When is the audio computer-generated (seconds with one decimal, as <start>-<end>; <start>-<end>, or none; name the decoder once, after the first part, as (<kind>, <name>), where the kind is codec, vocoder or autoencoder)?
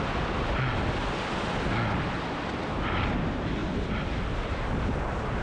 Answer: none